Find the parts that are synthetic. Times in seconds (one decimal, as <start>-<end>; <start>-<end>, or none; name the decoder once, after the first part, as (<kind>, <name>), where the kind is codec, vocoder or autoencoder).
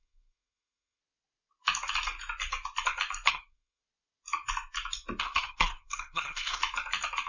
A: 0.0-1.0 (codec, SNAC); 3.3-3.8; 5.2-6.6